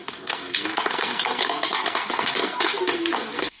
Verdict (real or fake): fake